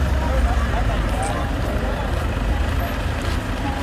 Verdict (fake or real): real